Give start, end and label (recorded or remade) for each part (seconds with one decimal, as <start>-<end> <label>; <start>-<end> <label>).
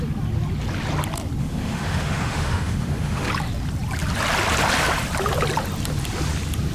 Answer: 0.0-1.4 recorded; 1.4-3.3 remade; 3.3-6.7 recorded